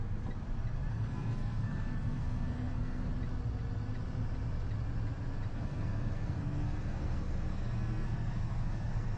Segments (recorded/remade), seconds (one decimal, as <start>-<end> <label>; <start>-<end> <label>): 0.0-0.9 recorded; 0.9-3.1 remade; 3.1-5.5 recorded; 5.5-9.2 remade